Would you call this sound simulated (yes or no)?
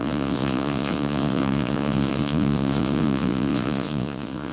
yes